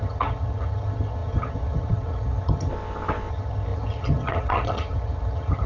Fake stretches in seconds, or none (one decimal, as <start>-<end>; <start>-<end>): 0.0-2.7; 3.3-5.7